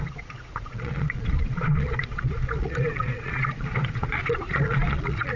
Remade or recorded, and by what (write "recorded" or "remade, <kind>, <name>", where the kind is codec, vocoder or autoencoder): remade, vocoder, Vocos